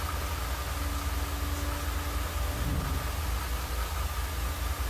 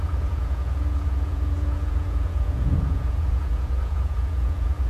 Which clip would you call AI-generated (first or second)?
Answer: second